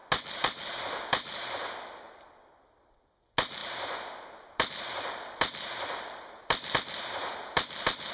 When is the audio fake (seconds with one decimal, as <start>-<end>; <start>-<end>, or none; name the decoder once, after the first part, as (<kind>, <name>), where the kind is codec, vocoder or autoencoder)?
none